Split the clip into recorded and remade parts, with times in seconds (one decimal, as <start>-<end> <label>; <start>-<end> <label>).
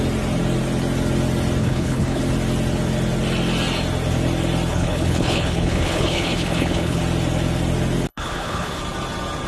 0.0-1.6 recorded; 1.6-2.2 remade; 2.2-4.7 recorded; 4.7-7.0 remade; 7.0-8.1 recorded; 8.1-8.8 remade; 8.8-9.5 recorded